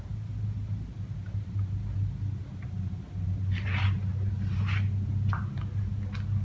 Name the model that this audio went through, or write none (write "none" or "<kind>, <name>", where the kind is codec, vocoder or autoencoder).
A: none